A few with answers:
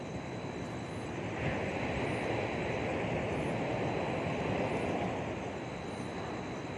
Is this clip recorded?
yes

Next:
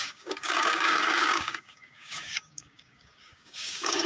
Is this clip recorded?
no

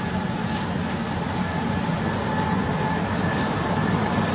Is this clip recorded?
yes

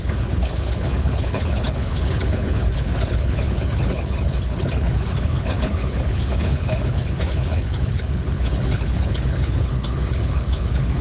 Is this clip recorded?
no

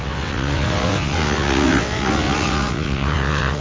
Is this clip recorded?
no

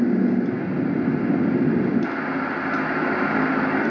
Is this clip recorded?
yes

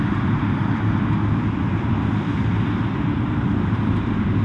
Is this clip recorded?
no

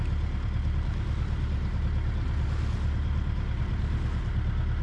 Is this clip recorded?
yes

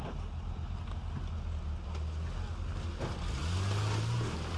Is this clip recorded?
yes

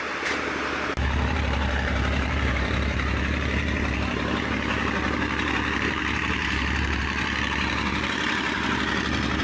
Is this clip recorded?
no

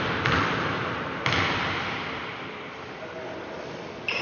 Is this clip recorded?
no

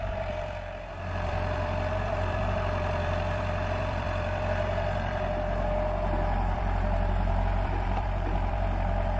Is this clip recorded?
no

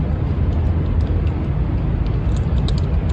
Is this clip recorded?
yes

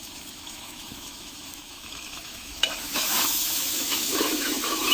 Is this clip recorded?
no